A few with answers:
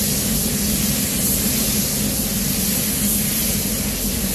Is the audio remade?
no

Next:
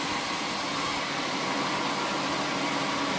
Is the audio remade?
no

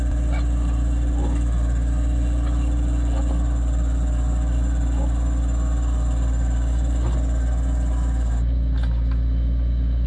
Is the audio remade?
no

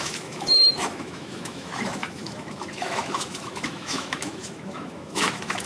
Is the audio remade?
yes